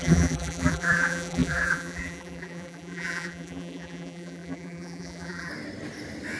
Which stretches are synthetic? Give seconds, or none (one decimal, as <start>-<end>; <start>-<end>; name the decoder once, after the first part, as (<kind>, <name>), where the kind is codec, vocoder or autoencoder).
0.0-5.5 (vocoder, BigVGAN v2)